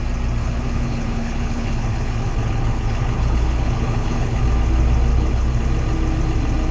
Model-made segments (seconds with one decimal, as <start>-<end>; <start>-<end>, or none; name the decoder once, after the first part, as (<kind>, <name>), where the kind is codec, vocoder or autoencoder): 0.4-4.4 (codec, HILCodec); 5.1-5.6